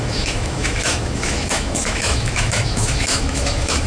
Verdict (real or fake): fake